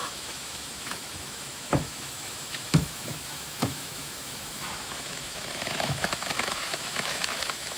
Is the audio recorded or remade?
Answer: remade